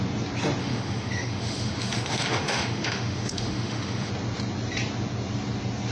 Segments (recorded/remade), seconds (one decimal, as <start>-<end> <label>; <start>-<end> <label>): 0.0-0.6 recorded; 0.6-4.1 remade; 4.1-5.9 recorded